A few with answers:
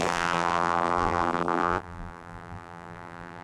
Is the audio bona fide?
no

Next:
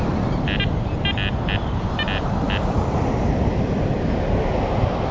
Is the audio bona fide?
yes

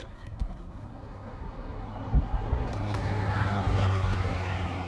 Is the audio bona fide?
no